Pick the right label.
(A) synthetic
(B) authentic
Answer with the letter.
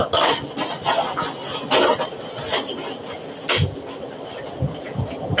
B